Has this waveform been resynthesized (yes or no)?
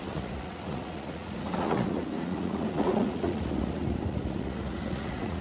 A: yes